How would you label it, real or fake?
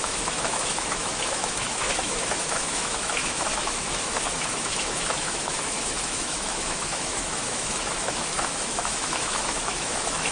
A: fake